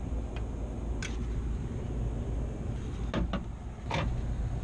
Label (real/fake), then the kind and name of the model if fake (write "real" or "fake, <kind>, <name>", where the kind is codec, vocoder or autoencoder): real